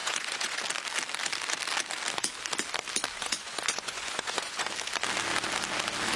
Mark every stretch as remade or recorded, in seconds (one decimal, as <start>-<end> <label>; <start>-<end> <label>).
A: 0.0-0.6 remade; 0.6-3.2 recorded; 3.2-4.7 remade; 4.7-6.2 recorded